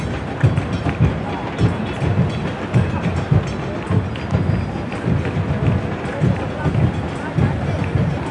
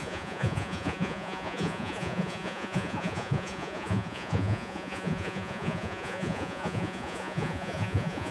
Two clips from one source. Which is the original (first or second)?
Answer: first